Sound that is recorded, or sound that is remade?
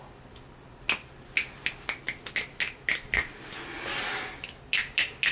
recorded